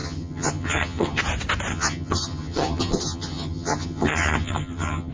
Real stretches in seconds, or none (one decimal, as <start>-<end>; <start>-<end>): 1.2-1.7